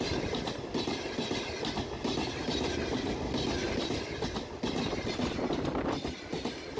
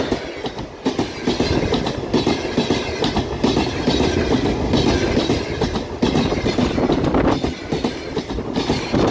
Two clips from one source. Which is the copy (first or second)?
first